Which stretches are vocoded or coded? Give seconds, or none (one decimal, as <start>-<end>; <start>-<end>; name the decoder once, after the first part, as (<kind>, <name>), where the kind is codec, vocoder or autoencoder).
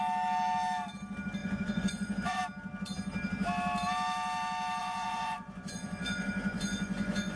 1.4-2.4 (vocoder, Vocos); 4.8-7.4